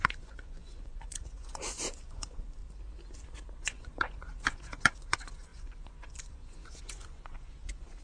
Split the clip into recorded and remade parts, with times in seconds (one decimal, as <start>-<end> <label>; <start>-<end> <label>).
0.0-2.6 remade; 2.6-3.6 recorded; 3.6-8.0 remade